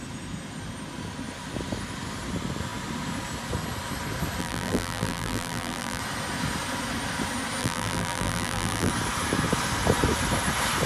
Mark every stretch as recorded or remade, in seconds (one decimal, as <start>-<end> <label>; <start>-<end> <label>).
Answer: 0.0-4.4 recorded; 4.4-6.0 remade; 6.0-7.6 recorded; 7.6-8.9 remade; 8.9-10.9 recorded